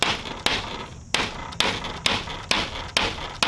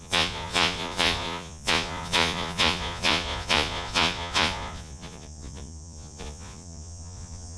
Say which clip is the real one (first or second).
first